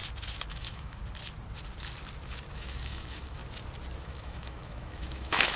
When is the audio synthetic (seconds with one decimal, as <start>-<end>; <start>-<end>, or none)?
0.5-1.0; 2.5-3.4; 4.0-5.6